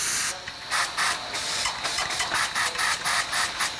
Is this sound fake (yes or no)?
no